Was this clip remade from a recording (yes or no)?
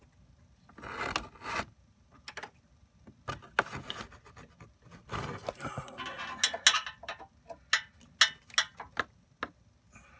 no